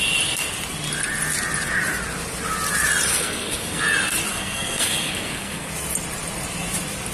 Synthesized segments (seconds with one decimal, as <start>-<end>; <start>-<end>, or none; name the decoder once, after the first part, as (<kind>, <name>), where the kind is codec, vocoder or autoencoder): 3.1-3.8 (codec, SNAC); 4.3-5.7